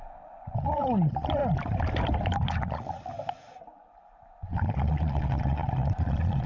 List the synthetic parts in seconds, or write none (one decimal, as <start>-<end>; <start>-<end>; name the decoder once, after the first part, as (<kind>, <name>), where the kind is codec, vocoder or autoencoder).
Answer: 0.0-1.4 (vocoder, Vocos); 2.5-3.1; 4.5-6.5

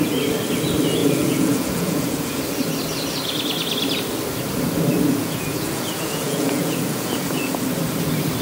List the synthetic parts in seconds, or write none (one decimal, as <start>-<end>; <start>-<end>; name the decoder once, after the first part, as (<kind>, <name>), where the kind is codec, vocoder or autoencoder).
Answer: 1.0-2.4 (vocoder, Vocos); 5.2-7.6

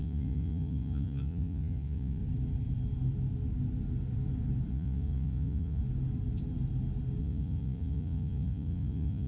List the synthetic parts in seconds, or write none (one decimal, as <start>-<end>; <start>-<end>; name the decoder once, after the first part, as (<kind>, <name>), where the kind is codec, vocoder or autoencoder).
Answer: 0.0-2.2 (vocoder, Vocos); 4.7-5.8; 7.2-9.3

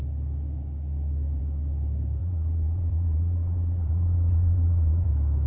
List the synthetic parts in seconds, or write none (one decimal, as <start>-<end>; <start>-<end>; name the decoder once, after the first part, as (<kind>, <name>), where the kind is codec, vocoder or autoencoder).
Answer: 2.2-5.1 (vocoder, Vocos)

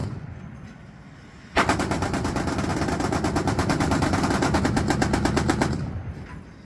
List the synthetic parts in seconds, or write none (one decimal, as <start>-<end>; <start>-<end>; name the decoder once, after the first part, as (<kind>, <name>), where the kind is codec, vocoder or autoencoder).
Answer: 0.0-0.8 (vocoder, Vocos)

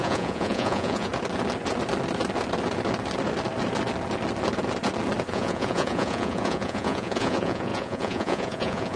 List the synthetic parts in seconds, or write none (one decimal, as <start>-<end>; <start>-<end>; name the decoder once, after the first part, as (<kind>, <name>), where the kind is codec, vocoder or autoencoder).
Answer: 0.0-1.1 (vocoder, Vocos); 5.3-9.0